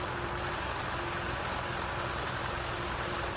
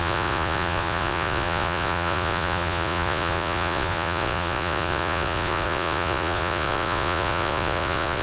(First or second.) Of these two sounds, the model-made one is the second